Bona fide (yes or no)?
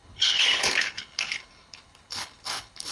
no